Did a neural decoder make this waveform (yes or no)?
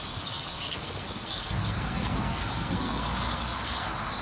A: yes